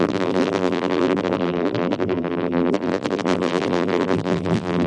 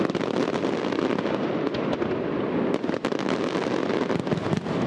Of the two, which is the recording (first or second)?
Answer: second